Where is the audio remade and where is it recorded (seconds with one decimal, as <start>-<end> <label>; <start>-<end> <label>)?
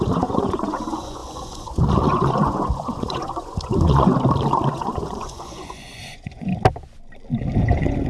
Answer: 0.0-4.1 remade; 4.1-4.7 recorded; 4.7-6.5 remade; 6.5-7.6 recorded; 7.6-8.1 remade